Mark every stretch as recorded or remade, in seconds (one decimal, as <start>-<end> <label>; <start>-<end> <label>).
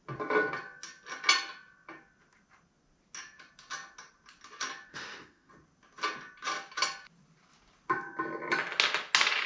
0.0-4.9 recorded; 4.9-5.5 remade; 5.5-9.5 recorded